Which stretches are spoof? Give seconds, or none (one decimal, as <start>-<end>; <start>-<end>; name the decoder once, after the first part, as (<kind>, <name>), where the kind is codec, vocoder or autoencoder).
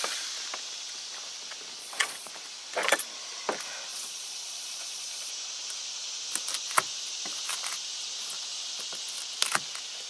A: 1.8-2.3 (vocoder, Vocos); 3.9-5.3